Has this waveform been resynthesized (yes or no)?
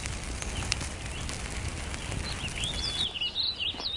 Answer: no